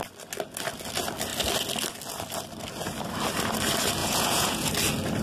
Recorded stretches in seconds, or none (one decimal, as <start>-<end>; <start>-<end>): 0.0-4.0; 4.7-5.2